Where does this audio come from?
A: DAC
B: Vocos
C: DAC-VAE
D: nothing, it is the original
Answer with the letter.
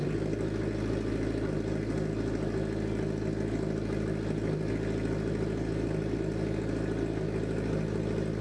D